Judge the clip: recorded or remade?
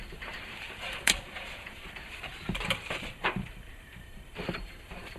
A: remade